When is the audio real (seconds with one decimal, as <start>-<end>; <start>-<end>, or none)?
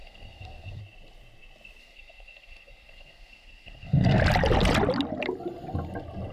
0.8-1.8; 4.2-6.3